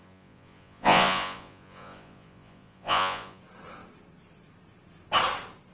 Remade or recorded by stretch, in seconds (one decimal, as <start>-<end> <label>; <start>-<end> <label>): 0.0-3.4 remade; 3.4-5.7 recorded